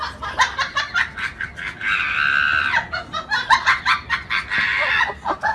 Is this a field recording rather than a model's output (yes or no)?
yes